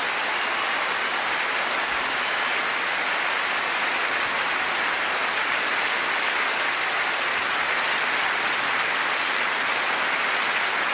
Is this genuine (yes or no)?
yes